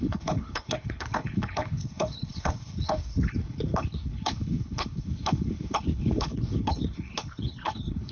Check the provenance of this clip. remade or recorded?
remade